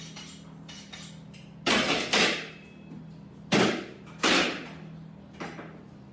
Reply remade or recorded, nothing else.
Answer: recorded